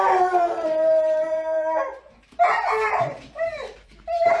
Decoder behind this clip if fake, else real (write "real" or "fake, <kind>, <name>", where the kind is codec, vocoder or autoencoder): fake, vocoder, BigVGAN v2